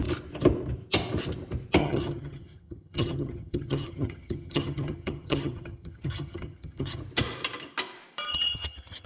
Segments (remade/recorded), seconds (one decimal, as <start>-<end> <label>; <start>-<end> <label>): 0.0-1.8 recorded; 1.8-7.0 remade; 7.0-8.3 recorded; 8.3-9.1 remade